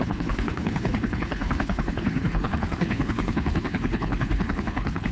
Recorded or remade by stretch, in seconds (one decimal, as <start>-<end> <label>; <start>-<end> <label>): 0.0-5.1 remade